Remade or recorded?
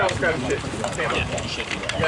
remade